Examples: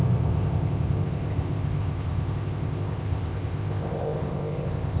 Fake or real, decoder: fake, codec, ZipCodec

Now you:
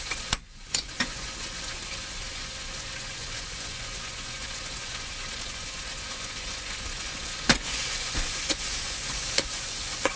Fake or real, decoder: fake, vocoder, Vocos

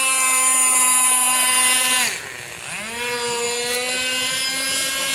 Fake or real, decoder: real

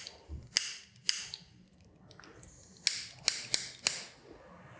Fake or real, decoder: real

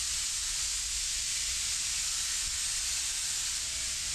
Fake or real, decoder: real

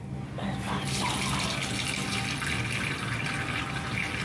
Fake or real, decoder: real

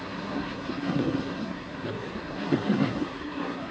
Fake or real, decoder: fake, codec, SNAC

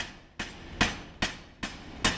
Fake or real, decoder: real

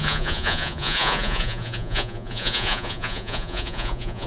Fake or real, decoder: fake, vocoder, Vocos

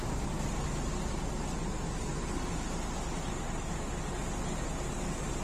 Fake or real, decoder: real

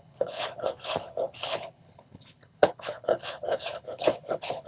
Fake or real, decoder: fake, codec, HILCodec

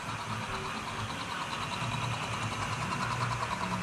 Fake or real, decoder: real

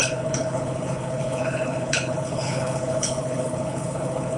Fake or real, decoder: fake, codec, HILCodec